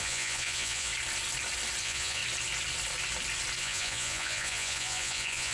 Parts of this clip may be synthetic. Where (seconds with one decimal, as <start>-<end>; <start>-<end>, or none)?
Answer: 0.0-0.9; 1.8-2.2; 3.6-5.5